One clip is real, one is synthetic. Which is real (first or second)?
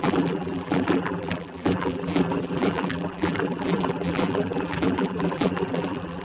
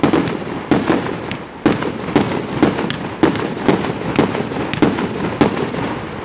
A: second